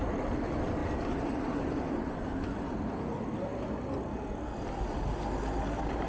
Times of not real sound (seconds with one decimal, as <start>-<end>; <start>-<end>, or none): none